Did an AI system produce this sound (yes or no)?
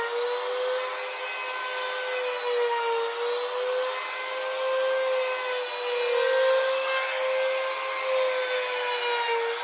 no